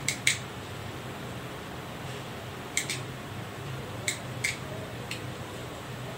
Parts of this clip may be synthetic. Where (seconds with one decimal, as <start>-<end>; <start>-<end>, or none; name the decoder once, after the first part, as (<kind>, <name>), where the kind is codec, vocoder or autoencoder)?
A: 0.0-0.8 (vocoder, BigVGAN v2); 2.9-6.2